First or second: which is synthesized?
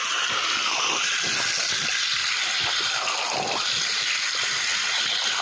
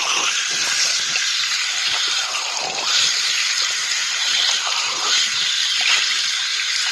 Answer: second